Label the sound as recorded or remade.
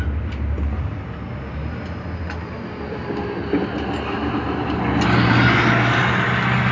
recorded